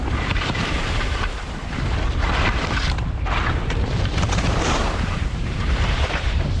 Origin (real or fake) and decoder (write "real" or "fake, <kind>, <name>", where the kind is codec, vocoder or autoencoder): fake, vocoder, BigVGAN v2